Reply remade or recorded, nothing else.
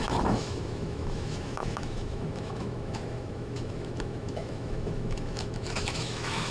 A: remade